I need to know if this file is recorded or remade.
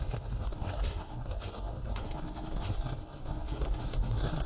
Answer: remade